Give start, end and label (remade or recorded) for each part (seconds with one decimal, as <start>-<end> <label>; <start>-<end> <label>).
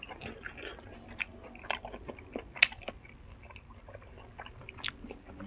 0.0-5.5 recorded